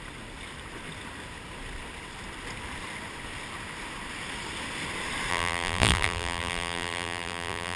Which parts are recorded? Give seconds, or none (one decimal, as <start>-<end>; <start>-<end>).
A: 0.0-5.3